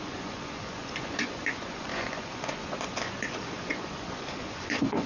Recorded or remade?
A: remade